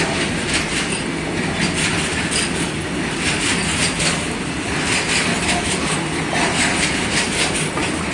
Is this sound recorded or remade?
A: recorded